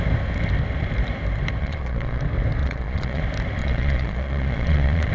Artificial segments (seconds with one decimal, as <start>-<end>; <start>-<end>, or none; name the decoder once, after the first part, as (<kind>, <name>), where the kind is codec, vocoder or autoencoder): 1.6-2.2 (vocoder, Vocos); 2.6-3.2; 3.6-5.1